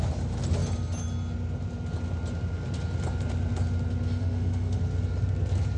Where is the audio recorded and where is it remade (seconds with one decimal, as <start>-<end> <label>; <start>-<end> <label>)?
0.0-4.2 recorded; 4.2-4.8 remade; 4.8-5.8 recorded